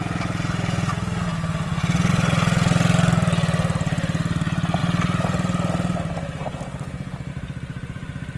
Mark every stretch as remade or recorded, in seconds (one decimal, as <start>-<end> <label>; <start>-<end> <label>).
0.0-8.4 recorded